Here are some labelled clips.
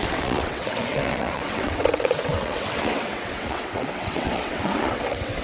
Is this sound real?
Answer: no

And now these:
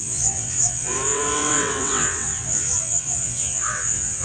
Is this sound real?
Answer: no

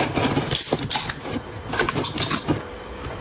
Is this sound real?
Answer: yes